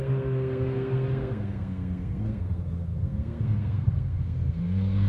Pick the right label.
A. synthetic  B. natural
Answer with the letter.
A